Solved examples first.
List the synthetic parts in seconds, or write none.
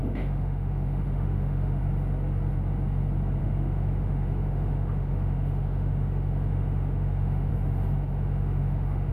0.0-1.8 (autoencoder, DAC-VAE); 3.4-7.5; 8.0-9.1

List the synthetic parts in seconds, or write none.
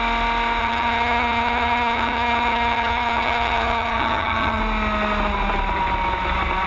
0.6-4.6 (vocoder, HiFi-GAN)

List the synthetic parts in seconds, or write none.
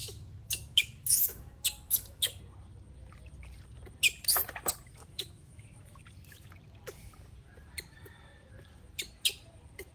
0.0-2.4 (autoencoder, DAC-VAE); 5.0-6.0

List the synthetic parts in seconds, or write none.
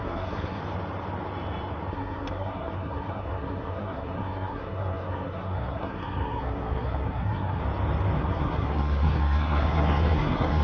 0.0-0.6 (codec, SNAC); 1.9-7.6; 8.2-10.6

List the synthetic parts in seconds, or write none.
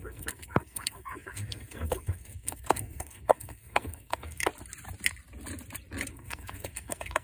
0.0-4.5 (codec, SNAC); 6.1-7.2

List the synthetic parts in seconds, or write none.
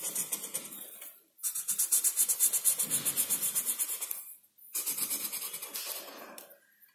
4.6-5.2 (vocoder, BigVGAN v2)